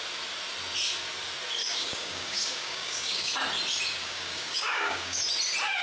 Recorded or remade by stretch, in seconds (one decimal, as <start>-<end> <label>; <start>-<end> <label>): 0.0-1.6 recorded; 1.6-3.3 remade; 3.3-4.0 recorded; 4.0-5.2 remade; 5.2-5.8 recorded

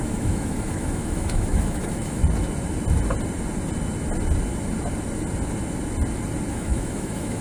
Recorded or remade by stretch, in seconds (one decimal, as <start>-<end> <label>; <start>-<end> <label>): 0.0-2.2 remade; 2.2-6.5 recorded; 6.5-7.4 remade

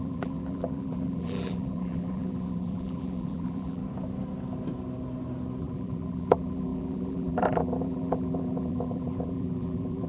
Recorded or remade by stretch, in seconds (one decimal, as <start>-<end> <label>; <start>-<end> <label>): 0.0-3.8 remade; 3.8-5.6 recorded; 5.6-10.1 remade

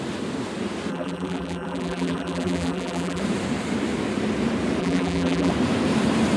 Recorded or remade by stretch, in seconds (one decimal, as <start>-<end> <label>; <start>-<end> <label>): 0.0-0.9 recorded; 0.9-3.2 remade; 3.2-4.8 recorded; 4.8-5.5 remade; 5.5-6.4 recorded

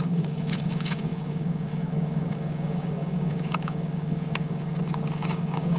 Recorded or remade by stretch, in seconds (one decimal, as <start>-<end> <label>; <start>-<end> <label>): 0.0-5.8 remade

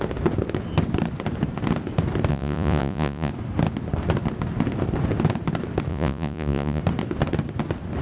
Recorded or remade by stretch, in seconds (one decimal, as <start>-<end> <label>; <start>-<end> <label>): 0.0-2.3 recorded; 2.3-3.3 remade; 3.3-5.9 recorded; 5.9-6.8 remade; 6.8-8.0 recorded

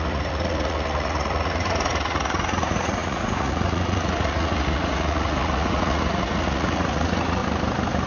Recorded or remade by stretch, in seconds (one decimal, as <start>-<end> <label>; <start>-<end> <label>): 0.0-7.4 remade; 7.4-8.1 recorded

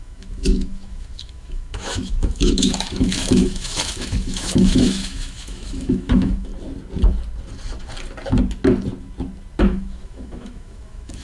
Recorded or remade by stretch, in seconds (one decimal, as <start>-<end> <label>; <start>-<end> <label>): 0.0-6.5 remade; 6.5-9.6 recorded; 9.6-11.2 remade